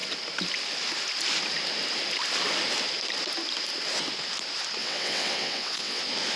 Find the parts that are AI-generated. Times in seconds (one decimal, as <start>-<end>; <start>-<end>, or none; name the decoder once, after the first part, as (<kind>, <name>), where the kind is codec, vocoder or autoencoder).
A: 4.8-6.0 (vocoder, WaveNeXt)